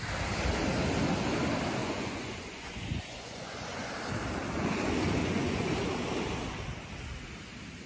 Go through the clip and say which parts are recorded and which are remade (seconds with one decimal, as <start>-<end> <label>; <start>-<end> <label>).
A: 0.0-1.8 recorded; 1.8-3.9 remade; 3.9-5.2 recorded; 5.2-5.7 remade; 5.7-7.9 recorded